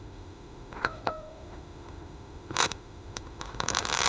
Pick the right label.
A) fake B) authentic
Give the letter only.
A